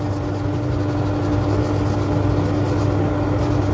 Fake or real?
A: real